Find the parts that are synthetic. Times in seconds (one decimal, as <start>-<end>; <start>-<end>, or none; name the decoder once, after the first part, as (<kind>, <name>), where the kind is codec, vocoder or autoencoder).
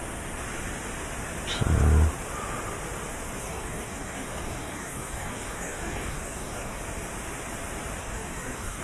3.4-6.8 (codec, DAC); 8.0-8.8